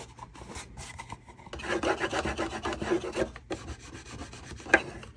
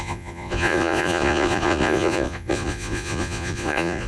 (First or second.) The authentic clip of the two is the first